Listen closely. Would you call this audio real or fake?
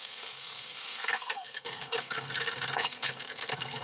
fake